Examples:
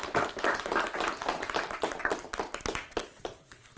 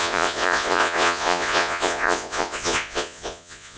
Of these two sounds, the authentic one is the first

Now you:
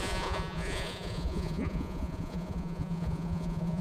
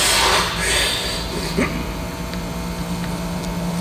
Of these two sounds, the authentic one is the second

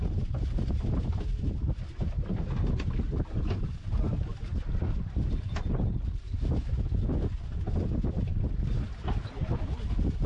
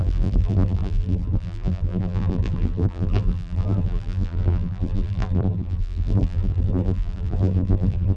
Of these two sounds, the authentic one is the first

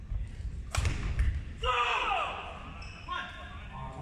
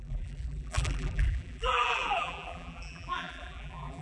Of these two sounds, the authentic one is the first